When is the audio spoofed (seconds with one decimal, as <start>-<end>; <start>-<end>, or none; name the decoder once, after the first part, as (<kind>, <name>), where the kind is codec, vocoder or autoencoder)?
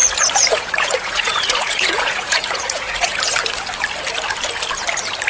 0.0-3.2 (vocoder, Vocos)